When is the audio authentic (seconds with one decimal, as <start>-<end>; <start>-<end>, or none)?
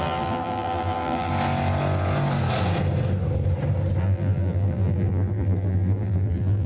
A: 1.3-4.0